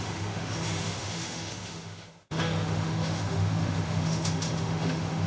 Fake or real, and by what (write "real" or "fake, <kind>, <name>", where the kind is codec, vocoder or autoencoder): fake, autoencoder, DAC-VAE